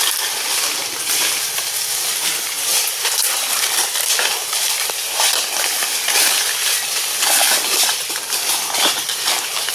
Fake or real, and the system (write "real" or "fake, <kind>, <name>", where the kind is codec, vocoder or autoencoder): real